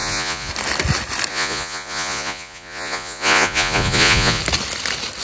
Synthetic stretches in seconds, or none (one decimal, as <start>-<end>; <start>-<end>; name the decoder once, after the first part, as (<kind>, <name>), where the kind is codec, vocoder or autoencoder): 0.0-0.5 (vocoder, Vocos); 1.3-4.4